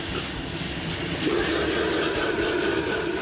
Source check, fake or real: real